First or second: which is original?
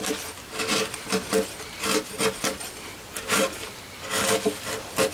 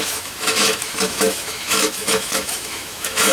first